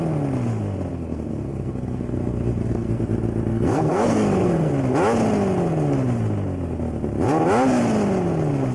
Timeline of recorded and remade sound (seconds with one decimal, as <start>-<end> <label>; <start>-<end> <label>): 0.0-0.9 recorded; 0.9-3.0 remade; 3.0-3.5 recorded; 3.5-4.7 remade; 4.7-8.7 recorded